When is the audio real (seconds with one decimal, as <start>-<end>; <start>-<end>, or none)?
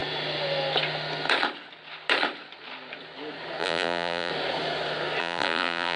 0.0-3.6; 4.3-5.2